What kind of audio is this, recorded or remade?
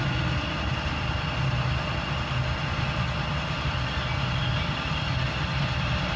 recorded